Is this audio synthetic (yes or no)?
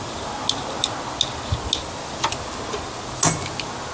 no